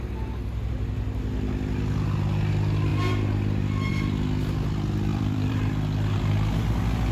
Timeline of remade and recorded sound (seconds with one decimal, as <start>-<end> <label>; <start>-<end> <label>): 0.0-5.1 recorded; 5.1-5.7 remade; 5.7-7.1 recorded